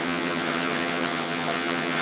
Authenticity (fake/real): fake